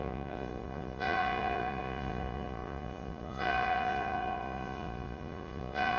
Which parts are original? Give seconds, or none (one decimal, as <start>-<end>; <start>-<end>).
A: none